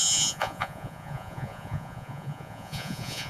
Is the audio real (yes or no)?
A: no